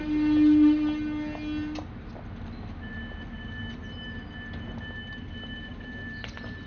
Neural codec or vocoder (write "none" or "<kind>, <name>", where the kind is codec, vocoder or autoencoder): none